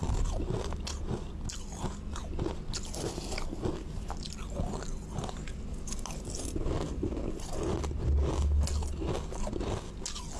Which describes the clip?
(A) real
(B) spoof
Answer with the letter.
A